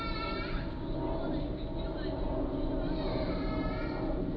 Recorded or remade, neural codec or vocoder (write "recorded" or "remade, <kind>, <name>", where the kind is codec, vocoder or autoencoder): recorded